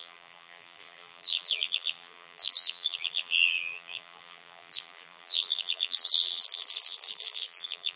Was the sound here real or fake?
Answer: fake